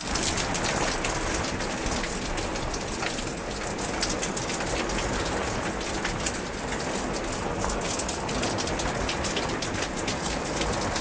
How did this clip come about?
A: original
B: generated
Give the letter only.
A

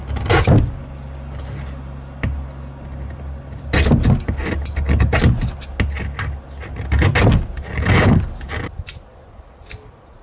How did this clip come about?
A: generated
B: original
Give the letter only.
B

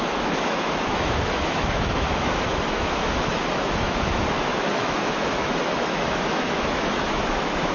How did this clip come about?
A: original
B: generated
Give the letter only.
B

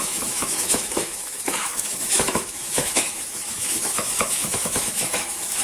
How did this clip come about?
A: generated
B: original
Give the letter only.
A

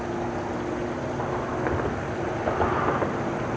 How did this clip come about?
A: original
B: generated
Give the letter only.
A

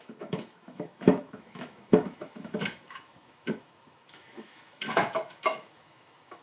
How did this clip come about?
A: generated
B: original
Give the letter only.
A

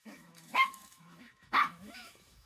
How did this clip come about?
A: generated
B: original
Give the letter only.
A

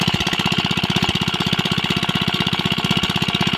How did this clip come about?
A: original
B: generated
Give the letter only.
A